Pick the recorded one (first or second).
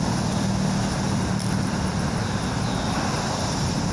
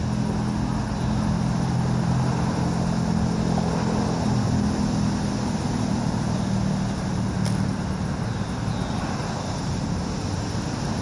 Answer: second